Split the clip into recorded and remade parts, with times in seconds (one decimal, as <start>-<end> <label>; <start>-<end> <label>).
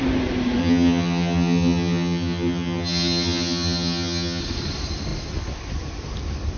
0.0-0.6 recorded; 0.6-4.4 remade; 4.4-6.6 recorded